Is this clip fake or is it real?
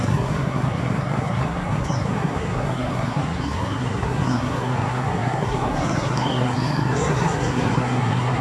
fake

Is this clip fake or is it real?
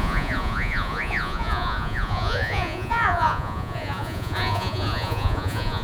fake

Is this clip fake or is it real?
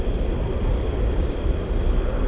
real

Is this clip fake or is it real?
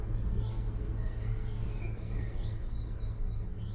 fake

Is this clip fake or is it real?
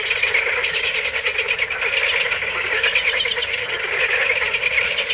real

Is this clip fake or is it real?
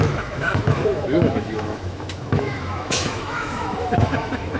fake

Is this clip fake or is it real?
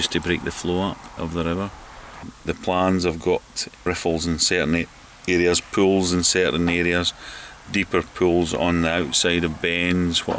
real